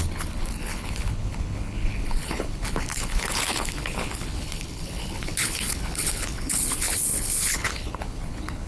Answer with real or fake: fake